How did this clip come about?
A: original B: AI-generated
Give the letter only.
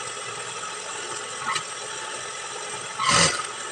A